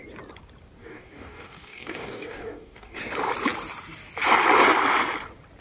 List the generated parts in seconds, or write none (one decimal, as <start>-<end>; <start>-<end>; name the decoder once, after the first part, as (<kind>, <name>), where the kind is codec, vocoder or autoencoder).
0.8-3.0 (codec, DAC)